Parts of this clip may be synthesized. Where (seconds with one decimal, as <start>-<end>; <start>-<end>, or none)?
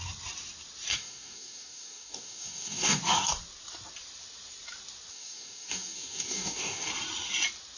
0.9-3.0; 5.1-6.9